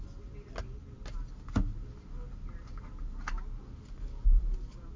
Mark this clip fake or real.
real